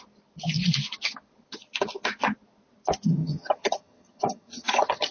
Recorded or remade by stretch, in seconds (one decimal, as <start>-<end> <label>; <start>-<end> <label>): 0.0-3.1 recorded; 3.1-5.1 remade